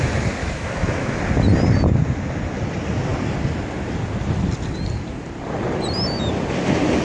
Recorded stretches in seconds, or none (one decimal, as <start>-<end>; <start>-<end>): 0.0-0.4; 1.2-7.0